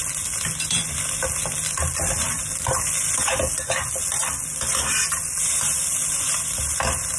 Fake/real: real